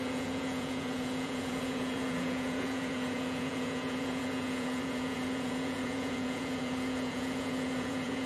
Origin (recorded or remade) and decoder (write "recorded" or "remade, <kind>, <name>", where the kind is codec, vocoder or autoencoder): remade, vocoder, Vocos